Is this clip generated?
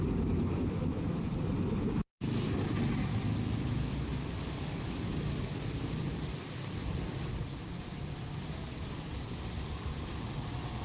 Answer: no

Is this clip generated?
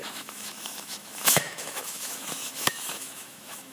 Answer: yes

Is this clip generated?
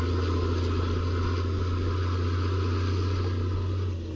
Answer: no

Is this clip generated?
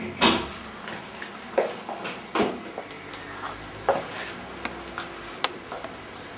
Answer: no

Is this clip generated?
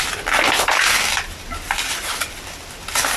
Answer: no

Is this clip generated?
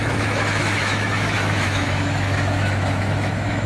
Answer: yes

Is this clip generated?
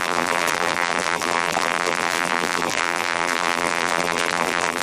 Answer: yes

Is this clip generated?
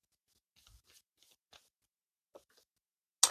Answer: no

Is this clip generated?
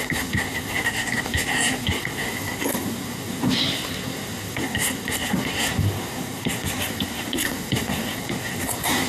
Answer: yes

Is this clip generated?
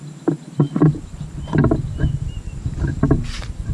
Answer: no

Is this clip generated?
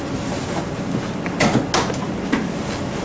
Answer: no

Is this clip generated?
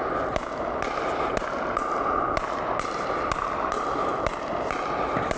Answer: no